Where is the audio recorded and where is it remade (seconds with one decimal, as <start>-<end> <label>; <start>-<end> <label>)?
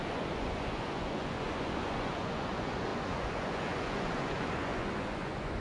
0.0-5.6 remade